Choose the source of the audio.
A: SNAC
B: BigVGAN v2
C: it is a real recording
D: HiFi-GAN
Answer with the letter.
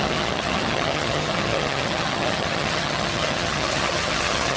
D